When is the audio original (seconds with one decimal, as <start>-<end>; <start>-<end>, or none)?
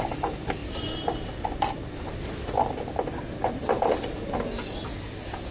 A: 0.0-5.5